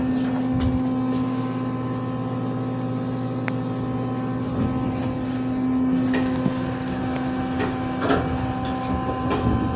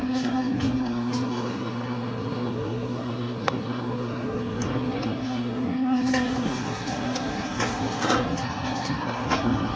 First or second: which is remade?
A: second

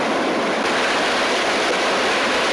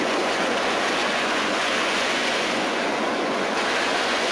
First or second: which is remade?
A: second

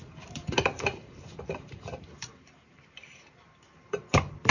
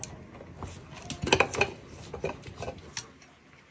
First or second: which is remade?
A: first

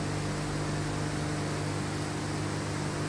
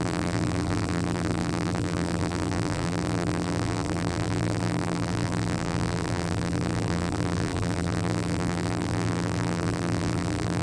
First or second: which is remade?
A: second